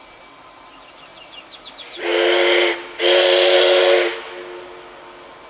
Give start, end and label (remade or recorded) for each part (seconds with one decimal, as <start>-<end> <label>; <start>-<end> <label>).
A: 0.0-5.5 recorded